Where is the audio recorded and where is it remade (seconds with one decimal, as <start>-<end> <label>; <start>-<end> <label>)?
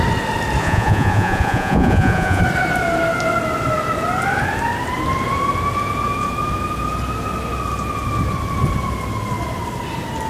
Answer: 0.0-0.6 recorded; 0.6-2.4 remade; 2.4-10.3 recorded